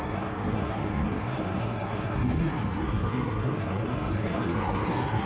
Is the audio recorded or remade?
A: remade